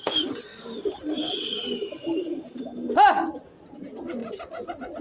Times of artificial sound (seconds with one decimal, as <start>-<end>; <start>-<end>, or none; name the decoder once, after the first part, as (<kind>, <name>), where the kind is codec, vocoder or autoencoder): 0.0-0.5 (vocoder, BigVGAN v2); 1.3-2.8; 3.7-4.2